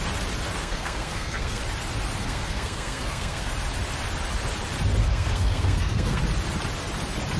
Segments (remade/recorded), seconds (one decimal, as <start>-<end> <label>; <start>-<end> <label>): 0.0-0.6 recorded; 0.6-1.6 remade; 1.6-2.2 recorded; 2.2-3.5 remade; 3.5-5.0 recorded; 5.0-6.2 remade; 6.2-7.4 recorded